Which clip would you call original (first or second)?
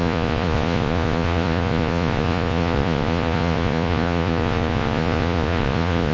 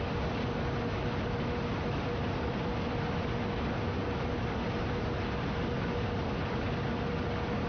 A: second